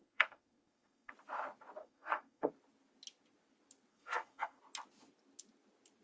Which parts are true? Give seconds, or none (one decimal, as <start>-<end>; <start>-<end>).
1.1-1.8; 2.5-3.9; 4.6-6.0